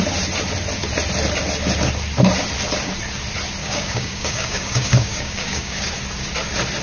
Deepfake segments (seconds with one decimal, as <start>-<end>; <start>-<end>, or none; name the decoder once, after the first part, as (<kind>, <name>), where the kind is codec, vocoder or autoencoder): 3.6-5.9 (codec, DAC)